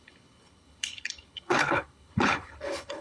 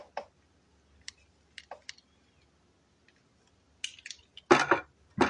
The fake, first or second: first